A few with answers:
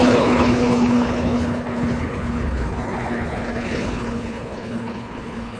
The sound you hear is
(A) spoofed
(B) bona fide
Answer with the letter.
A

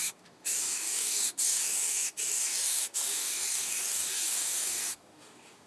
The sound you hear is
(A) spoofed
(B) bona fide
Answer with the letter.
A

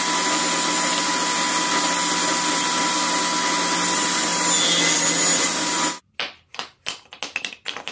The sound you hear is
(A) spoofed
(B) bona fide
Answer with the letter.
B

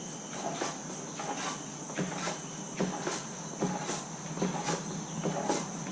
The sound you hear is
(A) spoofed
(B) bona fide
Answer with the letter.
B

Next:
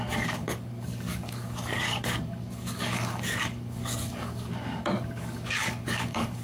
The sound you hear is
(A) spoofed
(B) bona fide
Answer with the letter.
A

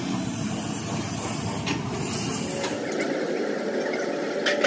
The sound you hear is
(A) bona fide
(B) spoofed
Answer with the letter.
A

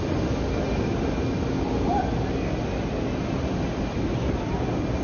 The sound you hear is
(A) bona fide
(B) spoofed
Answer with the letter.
A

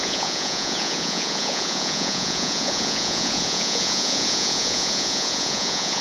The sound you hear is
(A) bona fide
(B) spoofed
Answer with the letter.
B